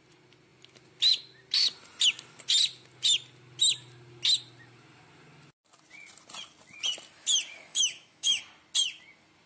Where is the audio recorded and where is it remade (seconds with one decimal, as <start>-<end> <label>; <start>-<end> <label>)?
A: 0.0-7.7 recorded; 7.7-8.4 remade; 8.4-9.5 recorded